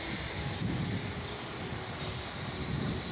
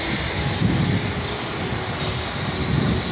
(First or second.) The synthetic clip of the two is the first